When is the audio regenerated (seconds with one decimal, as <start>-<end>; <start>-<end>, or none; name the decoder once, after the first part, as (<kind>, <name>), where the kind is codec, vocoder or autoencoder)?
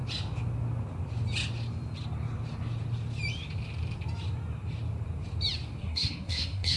5.8-6.8 (codec, SNAC)